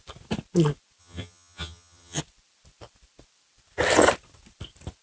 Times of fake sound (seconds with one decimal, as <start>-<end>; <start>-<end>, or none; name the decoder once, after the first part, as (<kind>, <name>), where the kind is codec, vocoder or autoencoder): 1.0-2.2 (vocoder, HiFi-GAN)